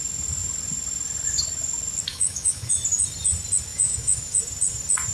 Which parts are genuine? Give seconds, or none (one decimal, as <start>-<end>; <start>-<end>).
0.0-2.1; 2.7-3.7; 4.4-5.1